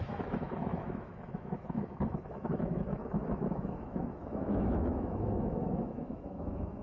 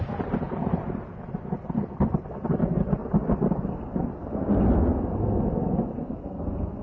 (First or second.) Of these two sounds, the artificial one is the first